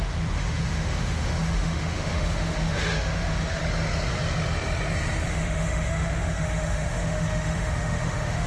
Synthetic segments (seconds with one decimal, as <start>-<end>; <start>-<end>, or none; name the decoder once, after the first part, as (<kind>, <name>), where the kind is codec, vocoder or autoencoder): 0.0-3.6 (autoencoder, DAC-VAE); 5.3-8.5